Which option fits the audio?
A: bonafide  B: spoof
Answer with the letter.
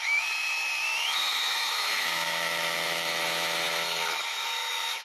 B